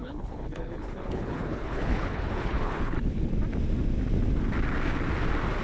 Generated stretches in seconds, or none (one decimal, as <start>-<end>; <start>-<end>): 0.0-3.3